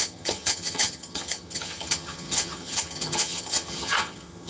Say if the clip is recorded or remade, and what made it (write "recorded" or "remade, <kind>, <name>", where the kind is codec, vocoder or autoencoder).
remade, vocoder, HiFi-GAN